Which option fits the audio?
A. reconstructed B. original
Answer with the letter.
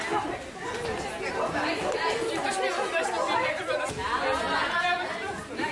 B